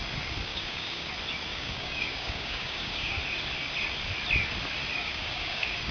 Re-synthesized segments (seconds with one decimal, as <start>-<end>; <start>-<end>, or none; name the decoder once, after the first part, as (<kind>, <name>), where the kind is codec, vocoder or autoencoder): 0.5-1.1 (codec, DAC); 1.5-3.2; 4.9-5.9